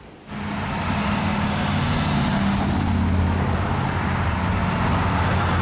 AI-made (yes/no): no